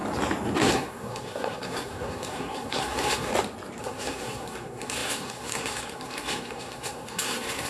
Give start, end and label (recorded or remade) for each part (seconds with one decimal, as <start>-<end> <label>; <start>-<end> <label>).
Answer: 0.0-0.6 recorded; 0.6-3.3 remade; 3.3-3.8 recorded; 3.8-7.7 remade